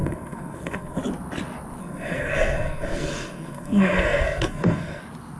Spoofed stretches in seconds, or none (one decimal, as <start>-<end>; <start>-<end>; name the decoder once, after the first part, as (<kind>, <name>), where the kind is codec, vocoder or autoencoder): 0.0-1.0 (codec, SNAC); 1.8-5.0

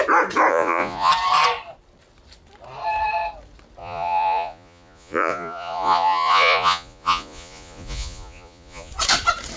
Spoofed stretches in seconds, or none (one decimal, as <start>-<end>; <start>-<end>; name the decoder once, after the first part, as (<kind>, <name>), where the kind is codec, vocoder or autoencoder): 0.5-1.1 (vocoder, Vocos); 3.8-8.9

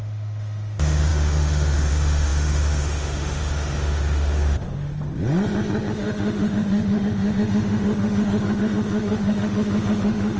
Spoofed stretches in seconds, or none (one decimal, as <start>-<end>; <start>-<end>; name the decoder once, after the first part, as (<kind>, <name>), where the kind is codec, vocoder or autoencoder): 0.0-4.9 (autoencoder, DAC-VAE); 5.9-10.4